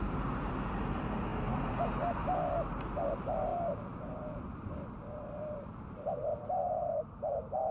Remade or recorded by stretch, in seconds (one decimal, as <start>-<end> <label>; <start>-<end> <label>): 0.0-3.5 remade; 3.5-5.8 recorded; 5.8-6.3 remade; 6.3-7.1 recorded; 7.1-7.7 remade